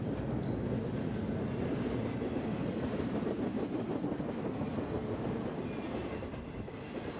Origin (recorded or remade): recorded